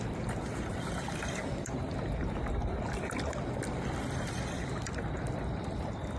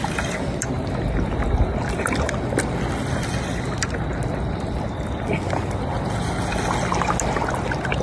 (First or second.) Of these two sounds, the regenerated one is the first